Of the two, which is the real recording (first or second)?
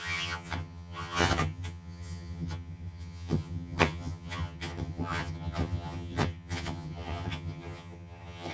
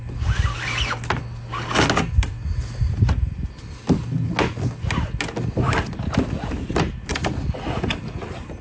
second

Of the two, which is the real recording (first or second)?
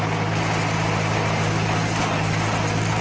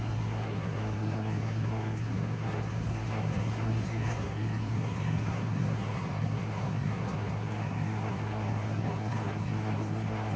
first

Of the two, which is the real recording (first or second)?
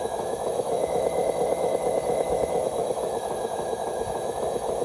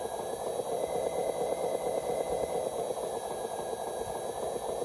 second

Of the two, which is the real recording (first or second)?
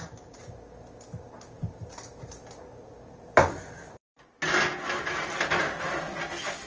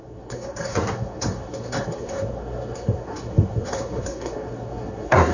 first